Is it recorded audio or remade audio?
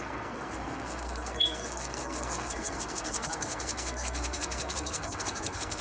remade